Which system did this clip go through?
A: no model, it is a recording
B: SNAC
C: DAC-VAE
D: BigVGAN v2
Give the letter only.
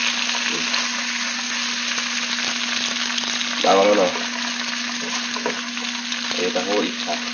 A